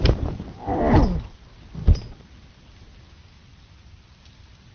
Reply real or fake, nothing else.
real